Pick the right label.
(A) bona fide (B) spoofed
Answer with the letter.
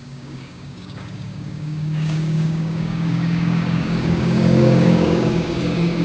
B